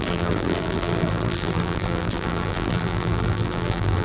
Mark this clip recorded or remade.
remade